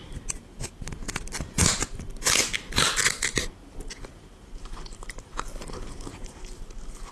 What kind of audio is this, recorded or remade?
recorded